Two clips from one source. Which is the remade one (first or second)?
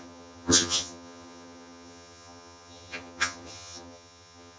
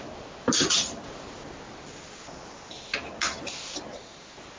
first